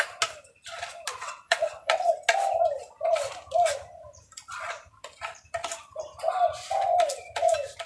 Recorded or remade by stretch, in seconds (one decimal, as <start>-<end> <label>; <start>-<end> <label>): 0.0-1.2 recorded; 1.2-2.1 remade; 2.1-7.9 recorded